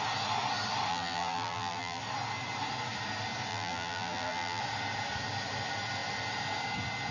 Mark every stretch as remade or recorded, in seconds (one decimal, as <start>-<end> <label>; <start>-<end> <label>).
0.0-0.9 recorded; 0.9-2.0 remade; 2.0-3.5 recorded; 3.5-4.6 remade; 4.6-7.1 recorded